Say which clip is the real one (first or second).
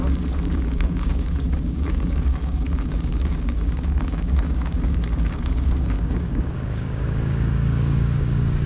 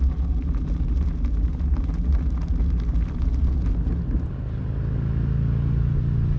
second